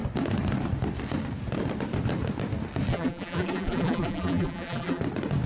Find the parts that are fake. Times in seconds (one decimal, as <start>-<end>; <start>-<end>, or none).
2.9-5.0